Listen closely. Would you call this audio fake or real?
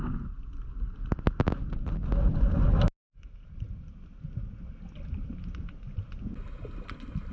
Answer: real